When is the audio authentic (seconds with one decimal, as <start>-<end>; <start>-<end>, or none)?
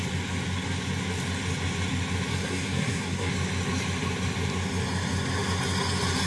0.0-2.3; 3.3-6.3